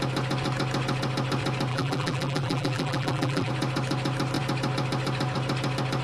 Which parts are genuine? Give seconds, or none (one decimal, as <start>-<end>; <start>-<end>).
0.0-1.7; 3.5-6.0